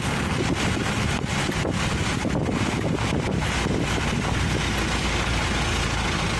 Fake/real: real